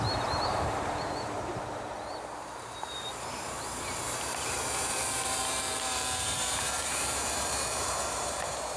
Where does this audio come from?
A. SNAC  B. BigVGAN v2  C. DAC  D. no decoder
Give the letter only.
B